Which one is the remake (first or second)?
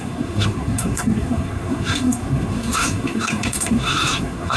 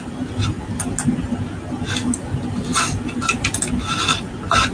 first